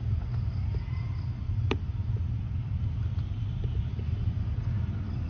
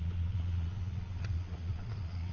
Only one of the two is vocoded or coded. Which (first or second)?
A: second